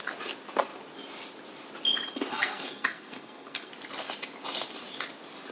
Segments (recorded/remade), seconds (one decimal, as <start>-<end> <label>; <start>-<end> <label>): 0.0-2.3 recorded; 2.3-3.7 remade; 3.7-5.5 recorded